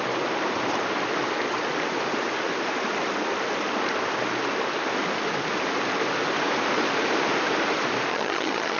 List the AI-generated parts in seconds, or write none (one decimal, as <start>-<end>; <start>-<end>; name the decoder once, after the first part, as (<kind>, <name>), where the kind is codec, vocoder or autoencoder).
8.1-8.8 (vocoder, HiFi-GAN)